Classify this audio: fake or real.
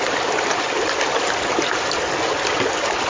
real